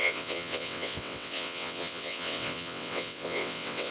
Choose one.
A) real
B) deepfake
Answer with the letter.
B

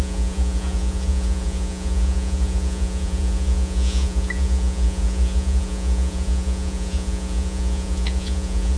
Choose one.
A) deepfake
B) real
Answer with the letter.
A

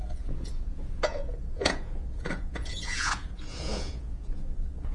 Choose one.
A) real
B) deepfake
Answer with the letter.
B